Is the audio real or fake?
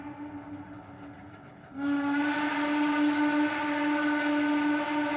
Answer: real